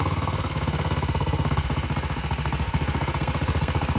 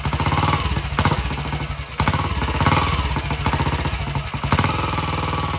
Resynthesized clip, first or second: first